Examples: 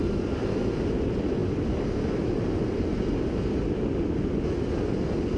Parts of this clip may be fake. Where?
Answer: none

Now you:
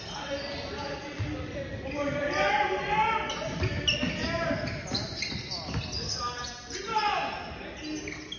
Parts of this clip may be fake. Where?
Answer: none

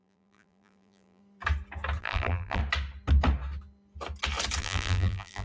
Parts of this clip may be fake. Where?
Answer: 0.0-1.2 (vocoder, BigVGAN v2); 2.0-2.6; 4.6-5.4

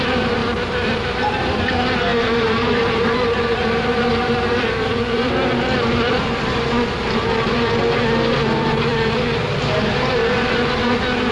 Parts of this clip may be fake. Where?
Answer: 0.4-1.5 (vocoder, BigVGAN v2); 2.1-6.7; 8.9-10.1